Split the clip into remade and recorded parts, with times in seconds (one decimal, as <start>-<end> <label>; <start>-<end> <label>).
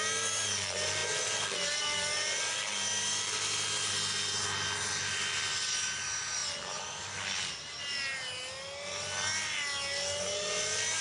0.0-11.0 recorded